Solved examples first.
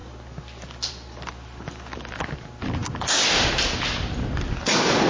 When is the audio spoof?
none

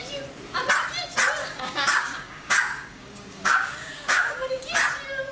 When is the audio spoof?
1.4-4.6 (codec, DAC)

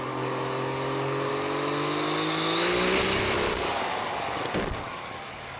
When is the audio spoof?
0.0-1.3 (codec, DAC); 3.5-5.6

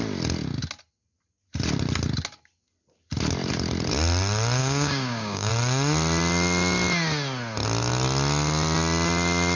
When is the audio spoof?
4.6-5.5 (codec, DAC)

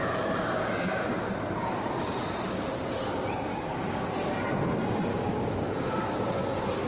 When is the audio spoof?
0.0-1.3 (codec, DAC); 3.5-4.1; 5.1-6.4

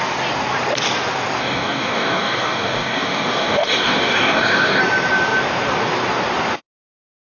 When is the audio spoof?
1.4-4.8 (codec, DAC)

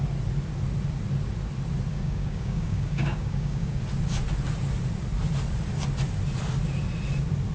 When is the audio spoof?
1.9-3.8 (codec, DAC)